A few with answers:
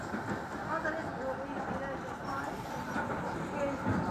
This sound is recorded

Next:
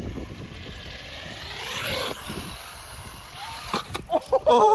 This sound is remade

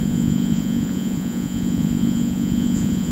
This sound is remade